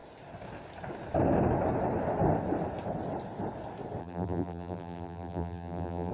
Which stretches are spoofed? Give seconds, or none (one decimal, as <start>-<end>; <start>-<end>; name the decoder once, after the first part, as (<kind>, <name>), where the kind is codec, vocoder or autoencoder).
4.0-6.1 (vocoder, BigVGAN v2)